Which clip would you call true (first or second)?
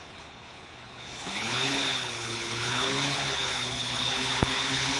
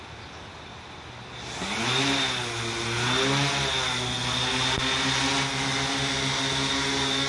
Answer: second